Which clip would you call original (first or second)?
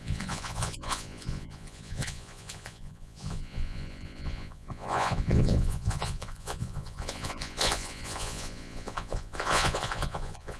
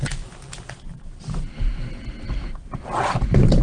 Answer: second